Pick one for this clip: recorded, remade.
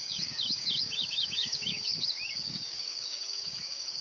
remade